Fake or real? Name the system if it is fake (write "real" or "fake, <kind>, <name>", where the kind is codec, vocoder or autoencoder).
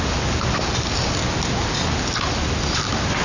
real